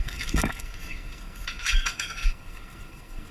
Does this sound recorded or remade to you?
remade